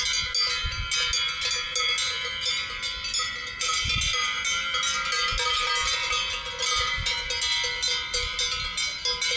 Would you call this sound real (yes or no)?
yes